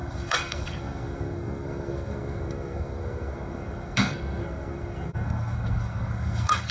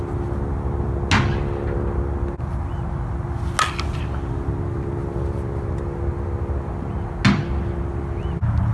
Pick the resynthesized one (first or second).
first